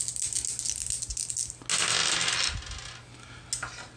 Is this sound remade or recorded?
recorded